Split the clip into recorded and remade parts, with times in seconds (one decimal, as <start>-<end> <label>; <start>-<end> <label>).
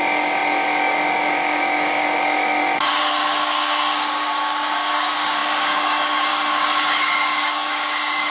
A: 0.0-8.3 remade